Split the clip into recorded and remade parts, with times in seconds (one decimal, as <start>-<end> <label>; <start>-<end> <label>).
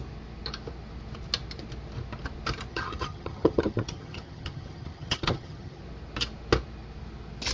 0.0-2.7 recorded; 2.7-5.8 remade; 5.8-7.5 recorded